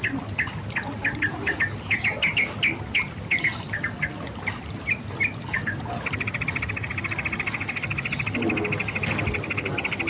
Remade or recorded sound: recorded